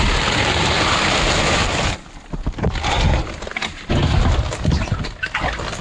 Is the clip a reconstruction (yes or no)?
no